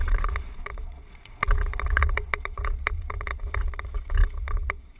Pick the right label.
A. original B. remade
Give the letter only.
B